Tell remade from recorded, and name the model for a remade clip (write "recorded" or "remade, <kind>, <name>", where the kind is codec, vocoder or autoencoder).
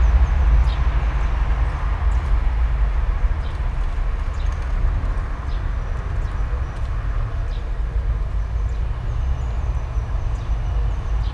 recorded